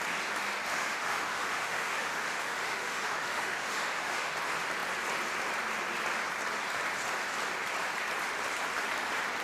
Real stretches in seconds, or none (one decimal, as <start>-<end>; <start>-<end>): 0.0-0.7; 4.3-9.4